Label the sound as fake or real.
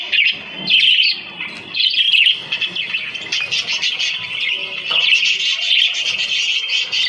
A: real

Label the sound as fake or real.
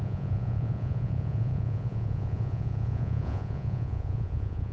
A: fake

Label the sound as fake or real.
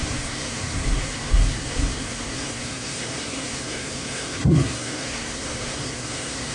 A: fake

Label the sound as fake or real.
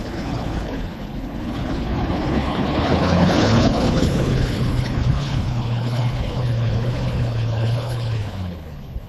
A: fake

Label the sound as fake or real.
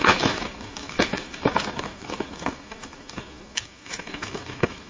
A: fake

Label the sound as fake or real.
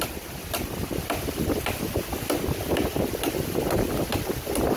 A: real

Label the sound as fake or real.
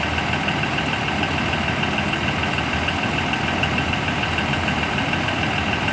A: real